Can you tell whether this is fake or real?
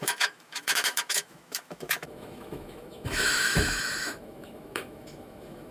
fake